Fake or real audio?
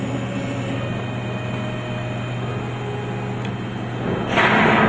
real